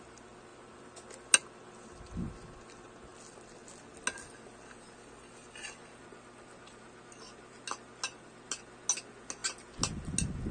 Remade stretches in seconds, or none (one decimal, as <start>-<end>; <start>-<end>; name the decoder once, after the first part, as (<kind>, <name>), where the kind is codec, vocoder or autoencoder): none